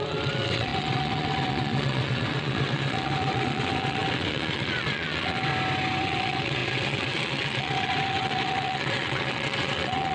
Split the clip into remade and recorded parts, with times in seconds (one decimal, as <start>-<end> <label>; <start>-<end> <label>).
0.0-5.5 remade; 5.5-6.0 recorded; 6.0-10.1 remade